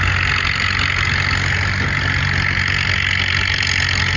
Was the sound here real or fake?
real